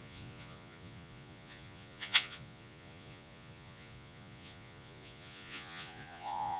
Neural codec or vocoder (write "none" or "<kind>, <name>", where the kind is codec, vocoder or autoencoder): vocoder, Vocos